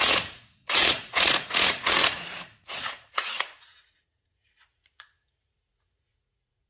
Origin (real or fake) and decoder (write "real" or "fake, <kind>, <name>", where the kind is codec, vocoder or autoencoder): fake, vocoder, Vocos